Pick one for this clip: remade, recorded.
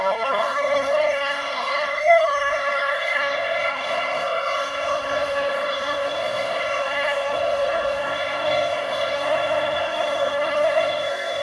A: remade